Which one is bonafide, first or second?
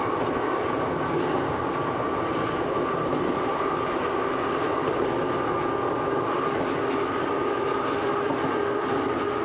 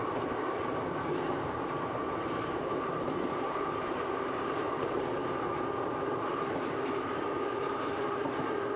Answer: first